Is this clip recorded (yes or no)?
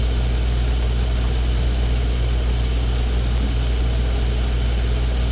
yes